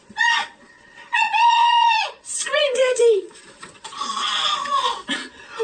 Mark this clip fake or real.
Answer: fake